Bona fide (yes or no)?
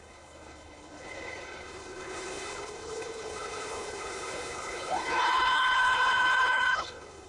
no